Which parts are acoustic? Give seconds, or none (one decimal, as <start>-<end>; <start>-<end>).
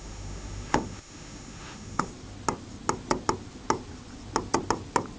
2.1-5.2